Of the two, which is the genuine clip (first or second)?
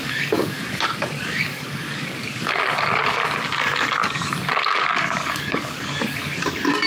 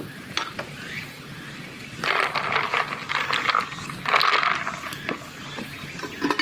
second